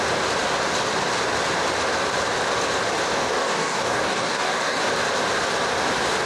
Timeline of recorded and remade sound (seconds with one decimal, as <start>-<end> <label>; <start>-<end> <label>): 0.0-3.2 recorded; 3.2-4.8 remade; 4.8-6.3 recorded